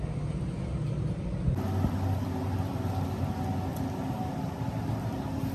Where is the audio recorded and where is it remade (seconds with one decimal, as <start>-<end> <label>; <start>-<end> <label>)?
0.0-5.5 recorded